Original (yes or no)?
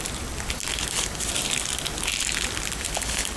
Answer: yes